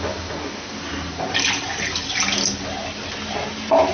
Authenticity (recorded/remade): recorded